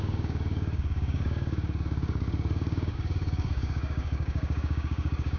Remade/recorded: remade